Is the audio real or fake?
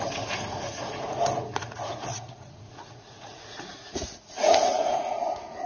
fake